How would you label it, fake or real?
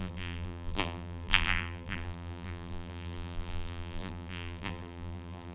fake